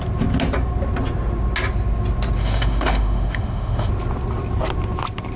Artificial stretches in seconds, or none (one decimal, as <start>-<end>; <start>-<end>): 2.4-3.9